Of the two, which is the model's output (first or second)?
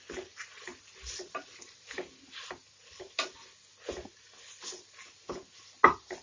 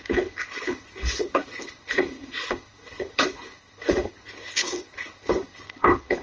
second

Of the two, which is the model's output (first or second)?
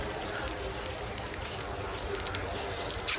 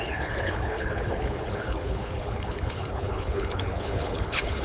second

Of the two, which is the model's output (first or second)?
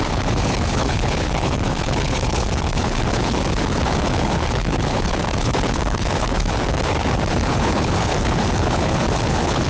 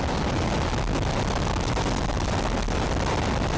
first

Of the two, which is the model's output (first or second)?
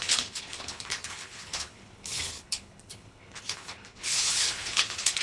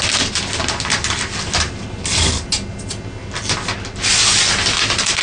first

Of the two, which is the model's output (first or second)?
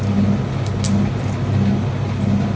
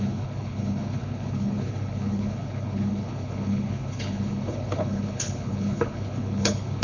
second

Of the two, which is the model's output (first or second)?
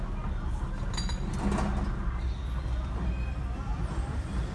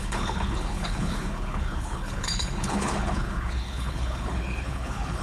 second